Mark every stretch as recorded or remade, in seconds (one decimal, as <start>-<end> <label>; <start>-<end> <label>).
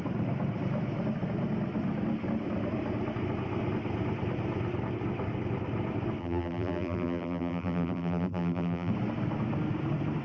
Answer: 0.0-6.2 recorded; 6.2-8.9 remade; 8.9-10.2 recorded